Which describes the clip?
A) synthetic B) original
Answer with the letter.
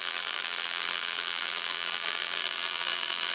A